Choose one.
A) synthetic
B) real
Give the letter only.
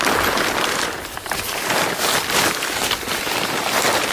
B